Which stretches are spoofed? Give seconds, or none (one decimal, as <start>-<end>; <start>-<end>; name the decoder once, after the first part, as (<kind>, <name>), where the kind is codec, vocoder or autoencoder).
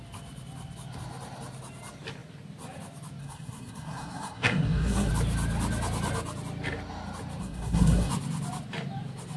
3.2-5.1 (codec, SNAC); 7.4-8.1